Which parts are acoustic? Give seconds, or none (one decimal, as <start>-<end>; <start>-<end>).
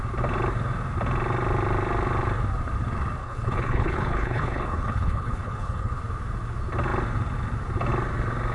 0.0-3.2; 6.0-8.5